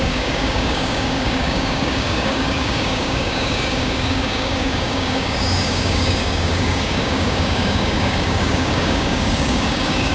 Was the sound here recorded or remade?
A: remade